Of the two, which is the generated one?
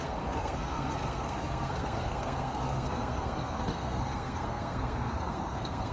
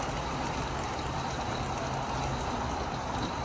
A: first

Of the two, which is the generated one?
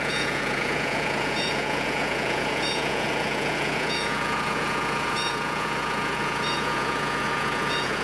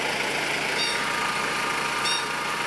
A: first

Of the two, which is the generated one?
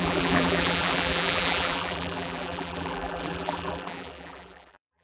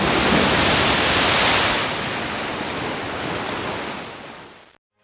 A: first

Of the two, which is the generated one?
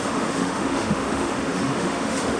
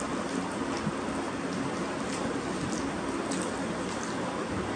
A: first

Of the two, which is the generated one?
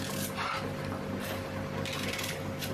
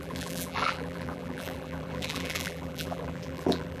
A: second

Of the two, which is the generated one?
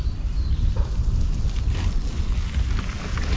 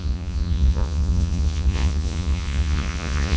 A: second